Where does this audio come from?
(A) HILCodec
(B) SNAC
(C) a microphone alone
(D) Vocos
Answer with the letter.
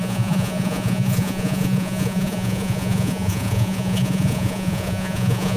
D